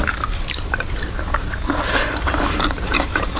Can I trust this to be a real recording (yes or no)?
no